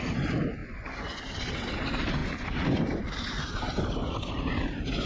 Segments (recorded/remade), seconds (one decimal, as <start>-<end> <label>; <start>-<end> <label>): 0.0-0.6 recorded; 0.6-1.2 remade; 1.2-5.1 recorded